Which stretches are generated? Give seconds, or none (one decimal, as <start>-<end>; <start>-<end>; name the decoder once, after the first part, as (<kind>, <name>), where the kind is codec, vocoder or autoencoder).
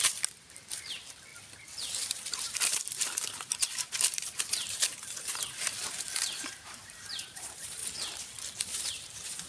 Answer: 0.0-7.8 (vocoder, BigVGAN v2); 8.5-9.5